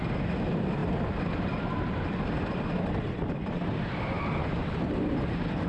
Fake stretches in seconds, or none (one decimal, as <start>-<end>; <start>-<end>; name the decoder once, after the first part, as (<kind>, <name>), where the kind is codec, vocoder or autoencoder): none